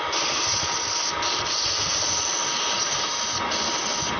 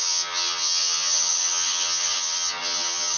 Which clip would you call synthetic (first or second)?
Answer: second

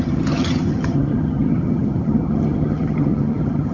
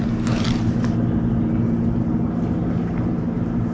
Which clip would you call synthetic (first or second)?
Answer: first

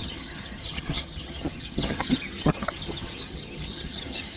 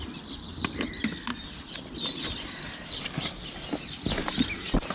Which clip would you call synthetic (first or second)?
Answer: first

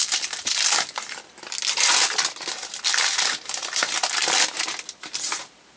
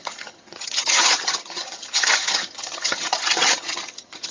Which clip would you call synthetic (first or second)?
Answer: second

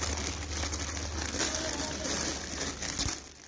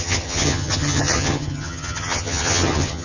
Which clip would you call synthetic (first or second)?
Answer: second